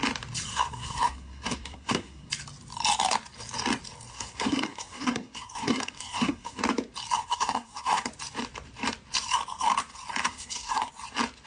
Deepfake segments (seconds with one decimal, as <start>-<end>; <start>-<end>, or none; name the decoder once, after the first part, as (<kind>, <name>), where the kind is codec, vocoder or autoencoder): 0.5-2.3 (codec, SNAC); 4.1-6.6; 7.2-8.1; 10.2-10.9